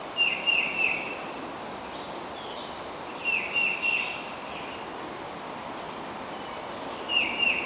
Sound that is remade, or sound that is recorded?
remade